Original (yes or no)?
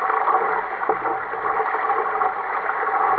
yes